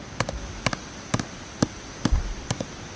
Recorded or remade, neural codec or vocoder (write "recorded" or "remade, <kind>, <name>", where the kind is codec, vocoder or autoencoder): recorded